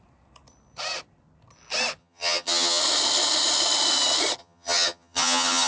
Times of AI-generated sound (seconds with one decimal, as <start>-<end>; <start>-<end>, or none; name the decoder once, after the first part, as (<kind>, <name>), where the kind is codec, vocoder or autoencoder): 2.0-2.8 (vocoder, HiFi-GAN); 4.4-5.7